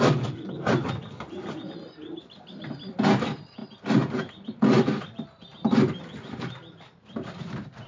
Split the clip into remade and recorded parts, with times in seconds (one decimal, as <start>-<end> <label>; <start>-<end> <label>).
0.0-3.6 remade; 3.6-4.3 recorded; 4.3-7.9 remade